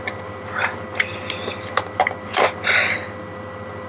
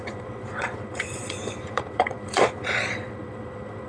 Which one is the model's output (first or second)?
second